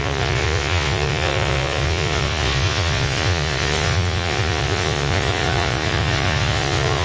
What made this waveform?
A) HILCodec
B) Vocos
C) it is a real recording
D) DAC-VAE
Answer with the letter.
B